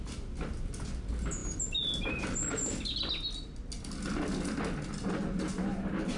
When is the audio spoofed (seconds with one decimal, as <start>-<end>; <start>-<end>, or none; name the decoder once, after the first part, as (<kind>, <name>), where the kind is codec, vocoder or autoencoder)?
none